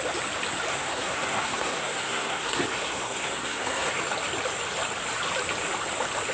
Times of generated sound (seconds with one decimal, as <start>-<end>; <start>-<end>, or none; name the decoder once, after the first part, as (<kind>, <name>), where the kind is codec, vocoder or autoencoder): 0.7-3.9 (codec, SNAC)